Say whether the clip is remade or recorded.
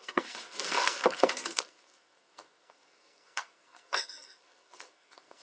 remade